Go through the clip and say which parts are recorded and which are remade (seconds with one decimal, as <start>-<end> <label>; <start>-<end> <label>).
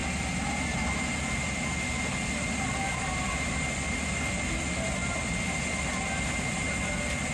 0.0-7.3 recorded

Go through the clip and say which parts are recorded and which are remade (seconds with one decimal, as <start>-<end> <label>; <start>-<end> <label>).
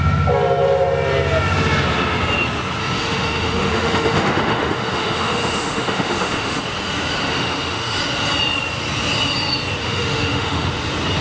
0.0-2.8 recorded; 2.8-6.6 remade; 6.6-7.3 recorded; 7.3-8.0 remade; 8.0-9.8 recorded; 9.8-10.7 remade; 10.7-11.2 recorded